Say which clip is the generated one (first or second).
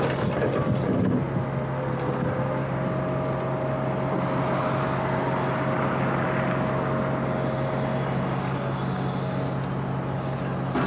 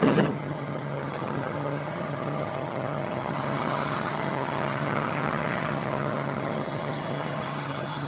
second